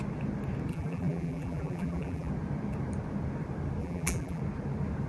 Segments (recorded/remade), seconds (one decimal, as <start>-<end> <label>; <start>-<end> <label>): 0.0-0.7 recorded; 0.7-2.3 remade; 2.3-3.8 recorded; 3.8-4.4 remade; 4.4-5.1 recorded